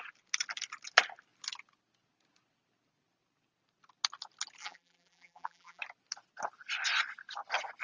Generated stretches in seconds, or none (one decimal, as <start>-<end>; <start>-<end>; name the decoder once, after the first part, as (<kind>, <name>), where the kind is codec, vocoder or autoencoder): 4.6-5.8 (vocoder, BigVGAN v2)